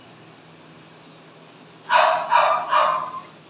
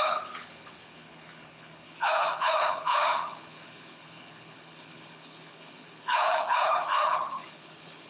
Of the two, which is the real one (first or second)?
first